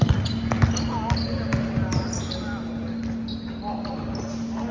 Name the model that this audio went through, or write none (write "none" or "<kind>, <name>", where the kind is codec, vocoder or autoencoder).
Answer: none